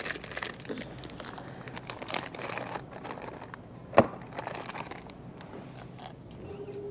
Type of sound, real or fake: real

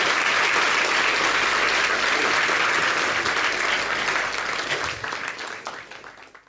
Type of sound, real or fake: real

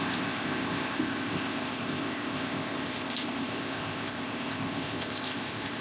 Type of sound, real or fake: fake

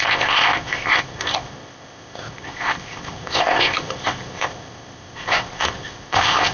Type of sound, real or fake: fake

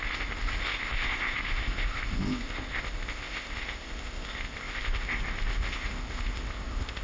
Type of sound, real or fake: fake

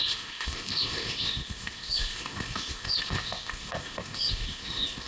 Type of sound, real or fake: fake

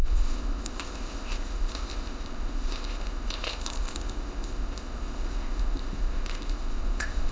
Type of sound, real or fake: fake